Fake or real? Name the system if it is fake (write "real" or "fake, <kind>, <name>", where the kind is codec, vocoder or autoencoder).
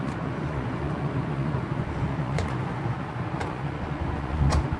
fake, vocoder, Vocos